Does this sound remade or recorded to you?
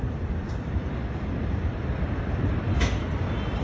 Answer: remade